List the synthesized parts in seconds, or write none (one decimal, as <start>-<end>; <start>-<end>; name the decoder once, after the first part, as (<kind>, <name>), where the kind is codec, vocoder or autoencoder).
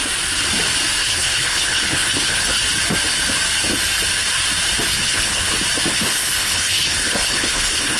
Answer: 1.0-2.6 (codec, HILCodec); 4.9-5.5; 5.9-8.0